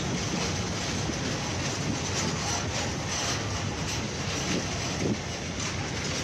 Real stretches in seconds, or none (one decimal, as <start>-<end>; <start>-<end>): 0.0-3.8; 4.4-6.2